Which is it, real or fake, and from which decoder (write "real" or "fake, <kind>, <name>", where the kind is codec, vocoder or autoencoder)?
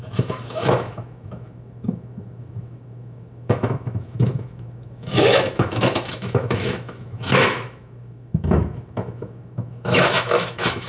fake, autoencoder, DAC-VAE